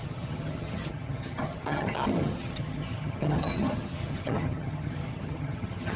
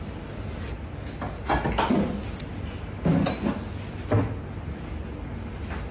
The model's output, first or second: first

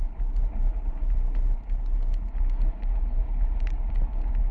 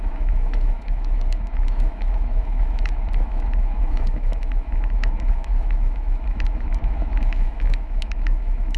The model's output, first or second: second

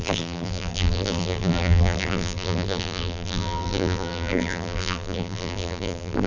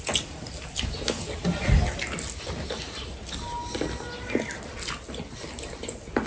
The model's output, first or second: first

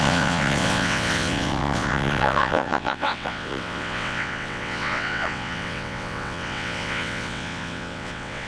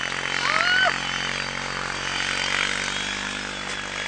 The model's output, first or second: first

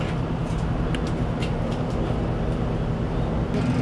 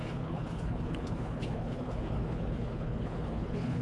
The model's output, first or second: second